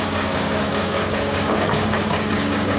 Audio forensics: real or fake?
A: fake